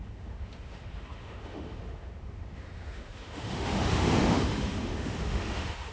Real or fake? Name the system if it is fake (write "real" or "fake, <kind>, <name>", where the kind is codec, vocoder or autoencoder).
fake, autoencoder, DAC-VAE